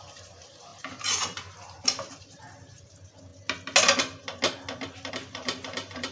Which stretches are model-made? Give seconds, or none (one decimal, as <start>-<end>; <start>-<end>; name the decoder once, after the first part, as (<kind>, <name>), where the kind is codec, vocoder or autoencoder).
0.0-3.3 (vocoder, BigVGAN v2); 5.1-6.1